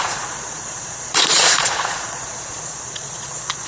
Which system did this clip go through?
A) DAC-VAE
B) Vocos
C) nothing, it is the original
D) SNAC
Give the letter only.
B